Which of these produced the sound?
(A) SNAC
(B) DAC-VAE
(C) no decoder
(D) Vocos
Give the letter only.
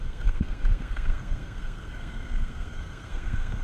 A